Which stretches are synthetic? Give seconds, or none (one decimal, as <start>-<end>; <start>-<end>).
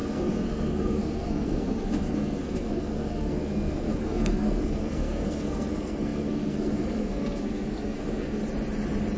0.0-8.4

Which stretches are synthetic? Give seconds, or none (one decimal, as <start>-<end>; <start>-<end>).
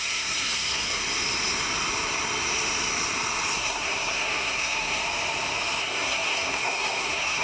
0.0-1.0; 3.6-5.0; 5.8-7.4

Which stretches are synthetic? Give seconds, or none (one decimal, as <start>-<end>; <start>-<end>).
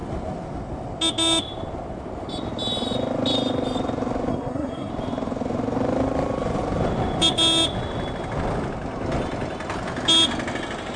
4.3-4.9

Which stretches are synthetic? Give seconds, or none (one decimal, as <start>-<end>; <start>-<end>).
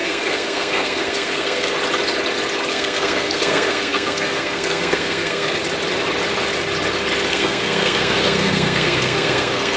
0.0-1.7; 2.7-5.6; 7.3-9.8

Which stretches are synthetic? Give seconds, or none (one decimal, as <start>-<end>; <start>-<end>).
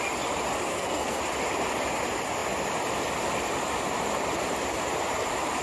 0.7-1.2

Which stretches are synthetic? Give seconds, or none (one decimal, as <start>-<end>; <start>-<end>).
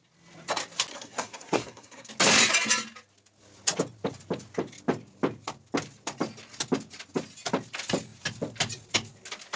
0.9-2.1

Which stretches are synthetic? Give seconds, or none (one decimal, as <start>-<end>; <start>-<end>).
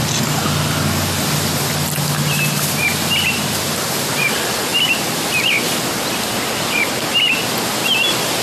none